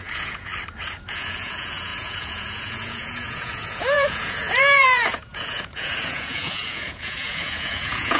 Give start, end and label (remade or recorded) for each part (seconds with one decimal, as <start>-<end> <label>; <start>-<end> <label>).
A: 0.0-0.5 remade; 0.5-1.1 recorded; 1.1-8.2 remade